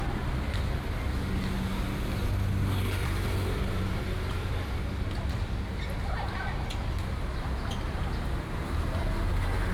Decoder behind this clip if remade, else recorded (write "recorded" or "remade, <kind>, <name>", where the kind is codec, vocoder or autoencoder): recorded